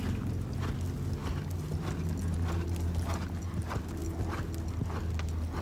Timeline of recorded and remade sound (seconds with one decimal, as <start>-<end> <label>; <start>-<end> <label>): 0.0-5.6 recorded